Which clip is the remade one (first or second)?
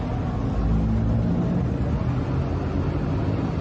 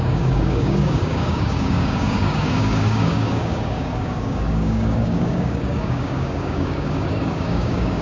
second